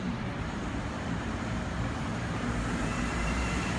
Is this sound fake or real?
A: fake